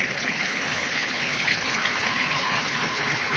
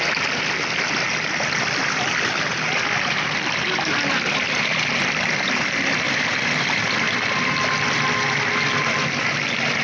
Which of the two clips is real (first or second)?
second